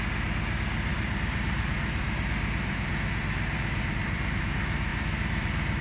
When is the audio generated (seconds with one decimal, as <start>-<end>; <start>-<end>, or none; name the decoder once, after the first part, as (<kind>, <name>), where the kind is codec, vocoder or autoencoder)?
0.9-4.4 (vocoder, BigVGAN v2); 4.9-5.8